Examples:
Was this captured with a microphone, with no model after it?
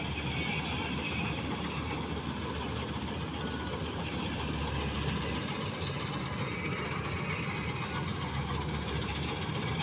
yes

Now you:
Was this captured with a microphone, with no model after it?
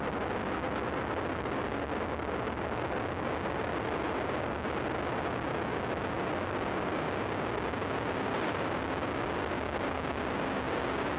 yes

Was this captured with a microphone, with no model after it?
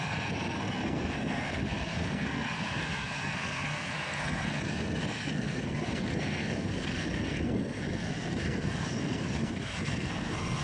no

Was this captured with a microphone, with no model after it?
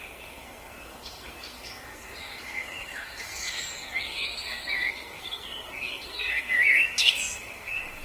no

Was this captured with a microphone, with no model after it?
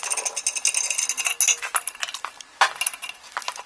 yes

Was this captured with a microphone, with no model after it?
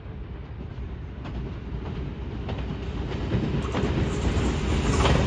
yes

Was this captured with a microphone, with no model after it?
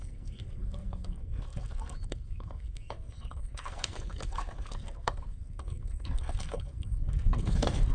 no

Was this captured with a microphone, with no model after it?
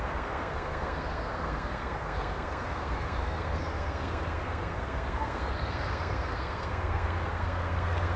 no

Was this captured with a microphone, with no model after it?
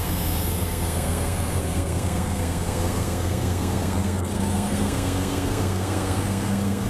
no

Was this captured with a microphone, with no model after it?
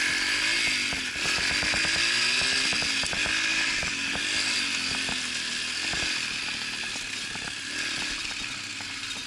yes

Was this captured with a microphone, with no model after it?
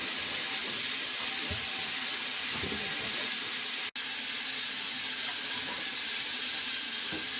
yes